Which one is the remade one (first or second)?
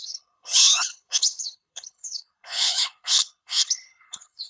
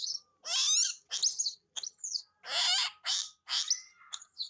first